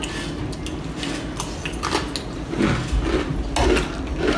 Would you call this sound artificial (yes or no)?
no